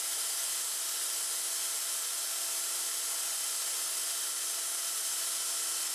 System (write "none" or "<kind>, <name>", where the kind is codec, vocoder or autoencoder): none